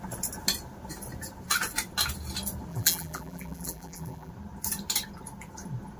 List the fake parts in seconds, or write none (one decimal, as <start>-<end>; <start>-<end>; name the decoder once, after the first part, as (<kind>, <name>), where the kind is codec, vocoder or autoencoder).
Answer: 2.7-4.3 (vocoder, BigVGAN v2)